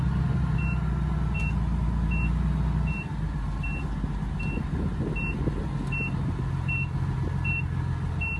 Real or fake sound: real